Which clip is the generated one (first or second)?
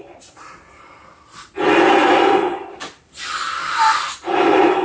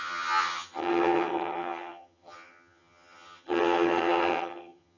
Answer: second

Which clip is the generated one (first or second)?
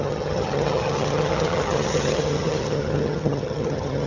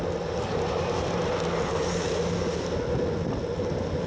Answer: first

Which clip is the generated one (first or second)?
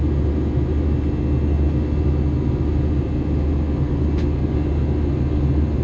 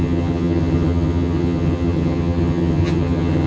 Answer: second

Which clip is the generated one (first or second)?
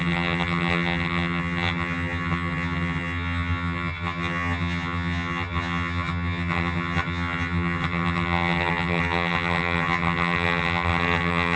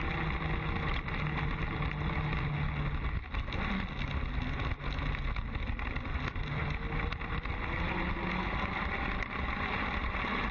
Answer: first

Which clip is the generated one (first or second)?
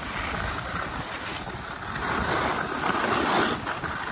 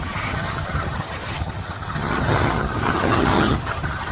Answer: second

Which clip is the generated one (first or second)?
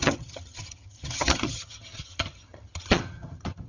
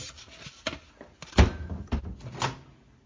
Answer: first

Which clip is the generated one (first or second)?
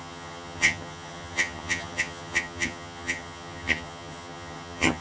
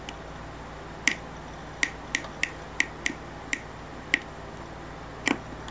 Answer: first